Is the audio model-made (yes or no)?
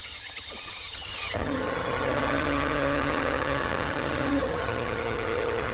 yes